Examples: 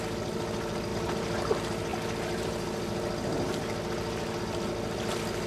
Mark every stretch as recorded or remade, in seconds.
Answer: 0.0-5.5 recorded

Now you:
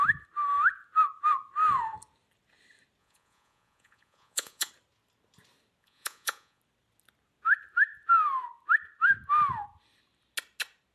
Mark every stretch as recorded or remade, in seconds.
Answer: 0.0-3.0 recorded; 3.0-4.7 remade; 4.7-5.8 recorded; 5.8-6.6 remade; 6.6-10.9 recorded

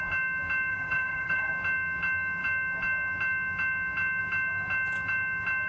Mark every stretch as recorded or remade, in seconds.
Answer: 0.0-0.7 recorded; 0.7-1.5 remade; 1.5-5.7 recorded

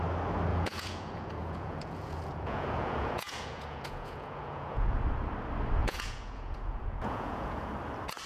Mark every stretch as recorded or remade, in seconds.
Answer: 0.0-0.5 recorded; 0.5-5.0 remade; 5.0-5.8 recorded; 5.8-7.7 remade; 7.7-8.3 recorded